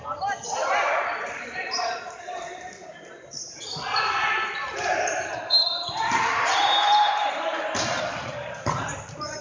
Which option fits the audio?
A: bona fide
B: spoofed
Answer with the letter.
B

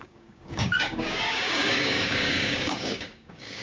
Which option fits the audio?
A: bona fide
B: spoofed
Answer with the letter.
B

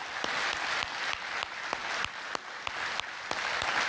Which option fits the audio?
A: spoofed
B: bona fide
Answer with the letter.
B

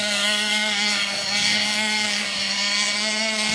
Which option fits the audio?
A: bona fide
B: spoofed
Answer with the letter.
B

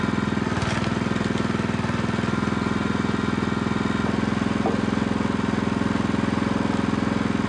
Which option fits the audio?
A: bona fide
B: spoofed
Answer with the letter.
A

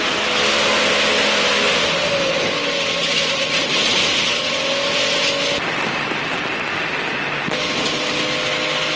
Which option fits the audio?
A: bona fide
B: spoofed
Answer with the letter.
A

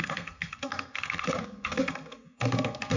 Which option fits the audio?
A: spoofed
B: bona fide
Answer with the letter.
A